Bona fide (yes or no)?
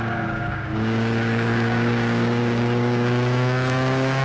no